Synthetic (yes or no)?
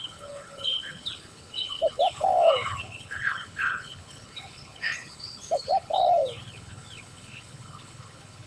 yes